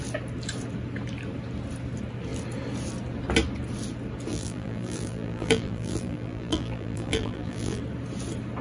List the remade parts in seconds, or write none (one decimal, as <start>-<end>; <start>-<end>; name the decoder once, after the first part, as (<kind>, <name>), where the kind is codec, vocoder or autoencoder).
4.3-7.8 (vocoder, BigVGAN v2)